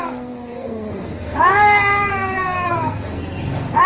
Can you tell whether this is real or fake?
fake